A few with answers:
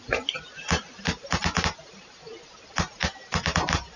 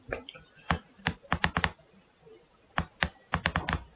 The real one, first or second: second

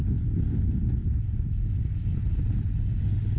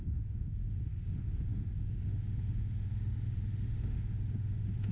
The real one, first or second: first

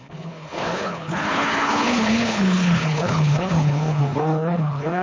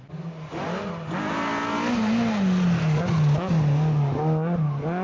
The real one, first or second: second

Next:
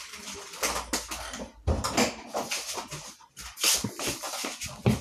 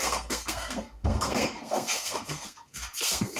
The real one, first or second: first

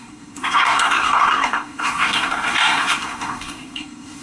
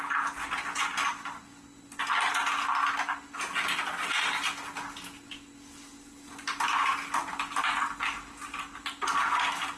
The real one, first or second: second